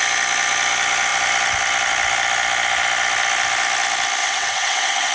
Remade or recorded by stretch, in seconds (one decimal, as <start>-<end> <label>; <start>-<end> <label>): 0.0-4.2 recorded; 4.2-5.1 remade